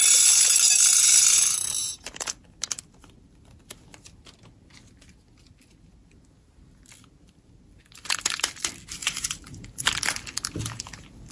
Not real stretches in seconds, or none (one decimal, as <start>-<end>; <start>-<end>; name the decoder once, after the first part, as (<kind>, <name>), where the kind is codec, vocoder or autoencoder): 1.8-2.4 (vocoder, BigVGAN v2); 9.0-9.8